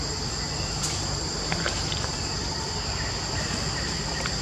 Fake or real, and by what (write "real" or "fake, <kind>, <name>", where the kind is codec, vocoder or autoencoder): real